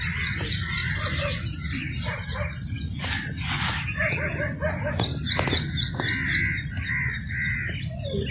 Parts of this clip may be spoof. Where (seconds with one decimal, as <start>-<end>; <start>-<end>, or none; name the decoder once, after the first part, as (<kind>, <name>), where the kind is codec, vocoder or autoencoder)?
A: none